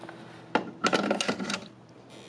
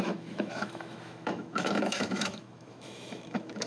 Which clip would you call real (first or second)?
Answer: first